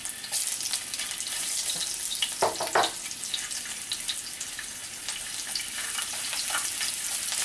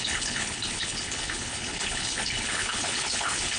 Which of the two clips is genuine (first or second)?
first